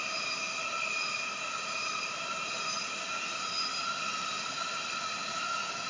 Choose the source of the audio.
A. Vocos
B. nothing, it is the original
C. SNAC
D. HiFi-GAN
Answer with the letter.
B